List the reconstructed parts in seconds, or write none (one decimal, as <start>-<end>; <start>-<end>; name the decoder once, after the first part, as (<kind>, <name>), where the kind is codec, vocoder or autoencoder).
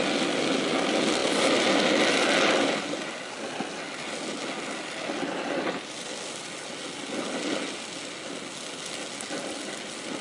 none